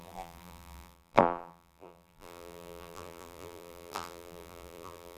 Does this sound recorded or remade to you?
remade